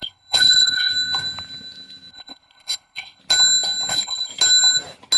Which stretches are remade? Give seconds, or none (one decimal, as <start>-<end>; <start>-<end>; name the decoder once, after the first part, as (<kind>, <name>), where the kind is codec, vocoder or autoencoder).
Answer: 0.0-0.9 (codec, HILCodec); 2.1-3.2; 3.9-4.3